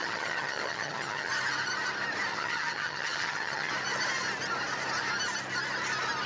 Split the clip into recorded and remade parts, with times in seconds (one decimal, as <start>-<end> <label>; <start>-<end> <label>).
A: 0.0-1.3 remade; 1.3-2.3 recorded; 2.3-3.7 remade; 3.7-6.3 recorded